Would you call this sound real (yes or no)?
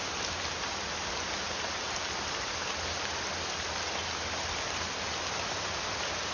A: yes